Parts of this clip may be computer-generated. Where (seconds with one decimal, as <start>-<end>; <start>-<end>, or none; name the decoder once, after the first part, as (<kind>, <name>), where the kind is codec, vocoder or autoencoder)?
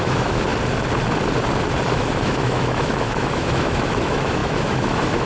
0.0-0.5 (autoencoder, DAC-VAE); 1.9-5.2